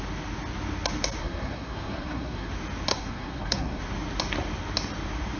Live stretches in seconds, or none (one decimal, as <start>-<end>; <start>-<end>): 0.0-1.2; 2.5-2.9; 3.8-5.4